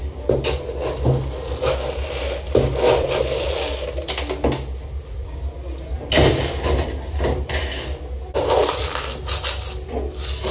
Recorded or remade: recorded